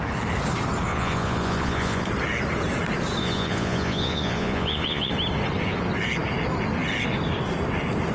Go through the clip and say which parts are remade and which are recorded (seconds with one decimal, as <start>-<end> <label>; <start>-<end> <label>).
0.0-0.9 recorded; 0.9-2.1 remade; 2.1-3.2 recorded; 3.2-5.1 remade; 5.1-8.1 recorded